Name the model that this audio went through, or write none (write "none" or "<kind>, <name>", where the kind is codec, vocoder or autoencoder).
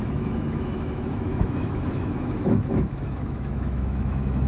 autoencoder, DAC-VAE